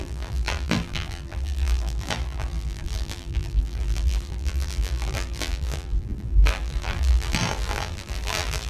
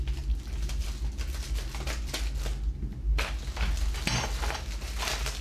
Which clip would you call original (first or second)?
second